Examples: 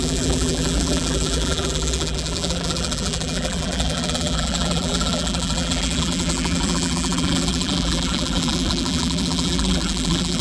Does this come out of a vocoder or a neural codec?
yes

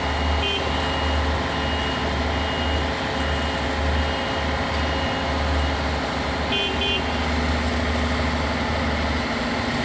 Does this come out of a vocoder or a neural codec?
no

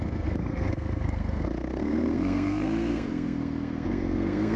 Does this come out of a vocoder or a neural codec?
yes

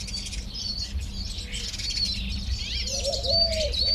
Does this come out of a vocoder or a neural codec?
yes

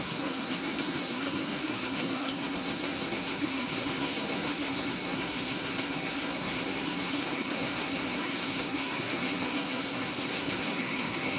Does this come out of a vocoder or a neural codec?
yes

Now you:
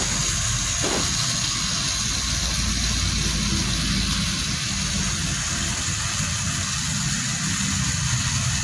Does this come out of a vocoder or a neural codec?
no